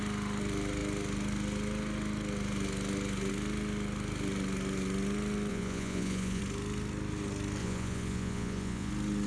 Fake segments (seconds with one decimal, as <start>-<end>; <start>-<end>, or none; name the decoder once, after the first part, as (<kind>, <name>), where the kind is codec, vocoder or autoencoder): 5.5-6.4 (vocoder, Vocos); 7.6-8.9